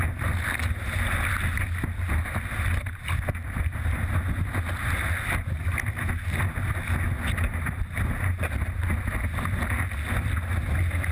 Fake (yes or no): no